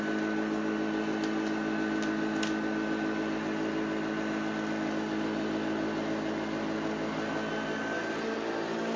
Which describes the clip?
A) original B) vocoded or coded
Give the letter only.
A